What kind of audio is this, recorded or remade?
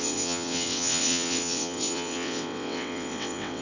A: remade